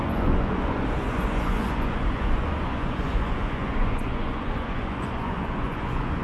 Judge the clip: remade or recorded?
remade